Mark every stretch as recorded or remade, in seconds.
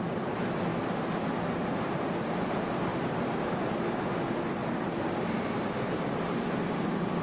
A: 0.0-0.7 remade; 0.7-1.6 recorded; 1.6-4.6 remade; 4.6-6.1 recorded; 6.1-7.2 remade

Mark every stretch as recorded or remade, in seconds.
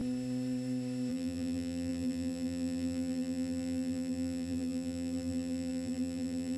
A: 0.0-1.1 recorded; 1.1-6.6 remade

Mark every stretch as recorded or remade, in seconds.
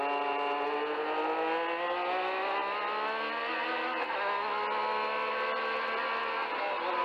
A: 0.0-7.0 recorded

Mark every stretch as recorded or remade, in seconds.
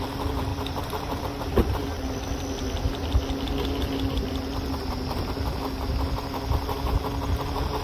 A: 0.0-0.5 recorded; 0.5-1.2 remade; 1.2-7.8 recorded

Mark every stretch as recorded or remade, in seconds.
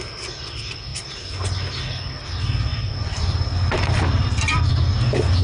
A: 0.0-2.7 recorded; 2.7-4.7 remade; 4.7-5.4 recorded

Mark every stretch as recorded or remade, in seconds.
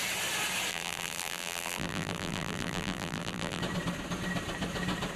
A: 0.0-0.7 recorded; 0.7-3.6 remade; 3.6-5.2 recorded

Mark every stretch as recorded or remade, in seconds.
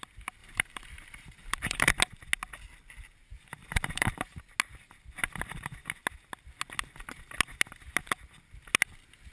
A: 0.0-0.4 recorded; 0.4-1.9 remade; 1.9-3.6 recorded; 3.6-4.4 remade; 4.4-9.3 recorded